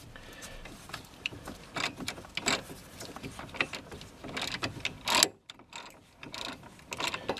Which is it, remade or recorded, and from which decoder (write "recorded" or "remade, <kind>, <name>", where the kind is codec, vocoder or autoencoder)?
recorded